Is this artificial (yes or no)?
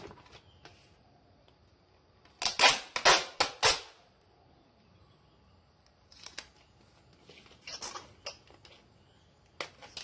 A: no